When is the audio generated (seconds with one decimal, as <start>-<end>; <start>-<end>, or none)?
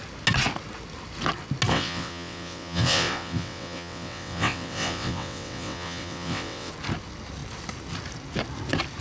1.7-6.7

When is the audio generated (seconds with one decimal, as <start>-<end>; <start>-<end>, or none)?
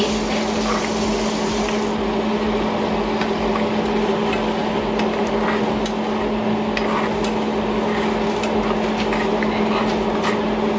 none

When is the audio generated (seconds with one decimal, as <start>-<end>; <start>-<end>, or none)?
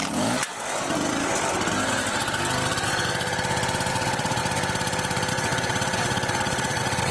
3.9-4.4; 5.3-7.1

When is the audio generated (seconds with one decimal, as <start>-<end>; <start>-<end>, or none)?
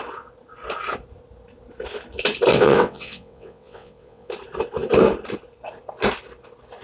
2.5-4.3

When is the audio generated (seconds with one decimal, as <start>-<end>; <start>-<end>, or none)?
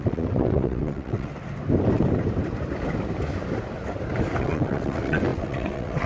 0.0-1.3; 4.4-6.1